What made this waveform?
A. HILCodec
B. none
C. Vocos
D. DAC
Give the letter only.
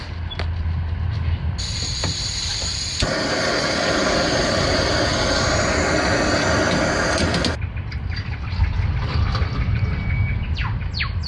B